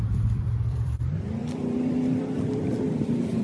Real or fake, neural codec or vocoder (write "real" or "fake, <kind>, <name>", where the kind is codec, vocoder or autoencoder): fake, vocoder, BigVGAN v2